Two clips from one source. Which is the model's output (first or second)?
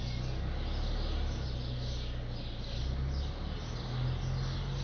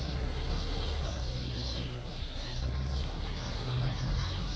second